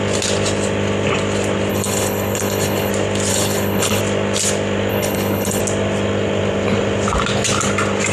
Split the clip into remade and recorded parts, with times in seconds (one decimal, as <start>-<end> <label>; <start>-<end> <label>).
0.0-1.7 recorded; 1.7-2.9 remade; 2.9-3.3 recorded; 3.3-4.0 remade; 4.0-4.9 recorded; 4.9-5.6 remade; 5.6-8.1 recorded